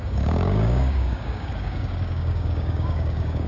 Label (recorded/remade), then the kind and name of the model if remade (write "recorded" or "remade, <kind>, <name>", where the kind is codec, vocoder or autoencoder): remade, codec, DAC